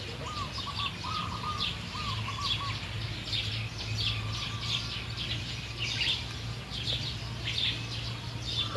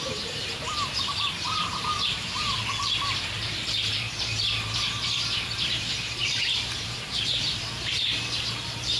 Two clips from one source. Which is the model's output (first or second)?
second